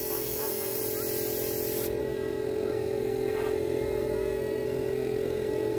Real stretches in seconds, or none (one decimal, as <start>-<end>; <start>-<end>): 0.8-2.0